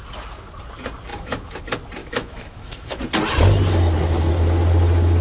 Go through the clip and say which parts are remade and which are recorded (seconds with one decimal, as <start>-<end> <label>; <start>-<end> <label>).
0.0-1.1 recorded; 1.1-1.6 remade; 1.6-2.0 recorded; 2.0-3.0 remade; 3.0-5.2 recorded